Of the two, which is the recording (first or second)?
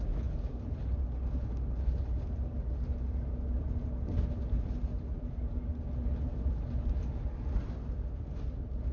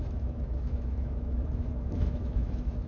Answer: first